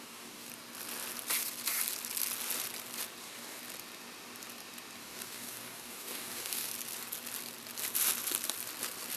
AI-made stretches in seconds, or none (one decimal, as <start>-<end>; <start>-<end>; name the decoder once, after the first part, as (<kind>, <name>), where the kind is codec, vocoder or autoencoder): 0.0-0.5 (codec, DAC); 3.2-3.6; 5.0-6.7